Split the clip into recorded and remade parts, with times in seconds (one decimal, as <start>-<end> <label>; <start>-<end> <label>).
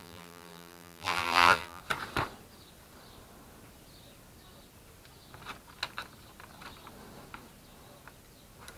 0.0-1.8 remade; 1.8-8.8 recorded